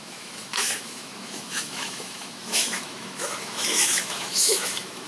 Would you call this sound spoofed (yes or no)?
yes